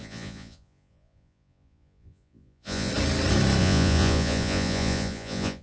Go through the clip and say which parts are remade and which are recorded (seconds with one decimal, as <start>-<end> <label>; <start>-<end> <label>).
0.0-2.9 remade; 2.9-3.6 recorded; 3.6-5.6 remade